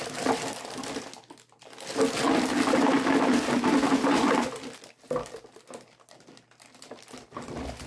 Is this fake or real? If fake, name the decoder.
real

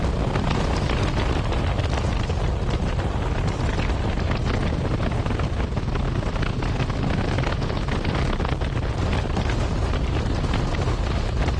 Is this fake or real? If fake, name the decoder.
real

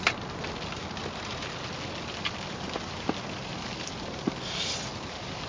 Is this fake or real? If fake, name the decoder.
real